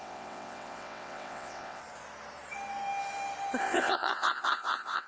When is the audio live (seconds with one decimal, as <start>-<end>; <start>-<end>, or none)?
1.8-3.6